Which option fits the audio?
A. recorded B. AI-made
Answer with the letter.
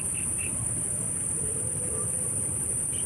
B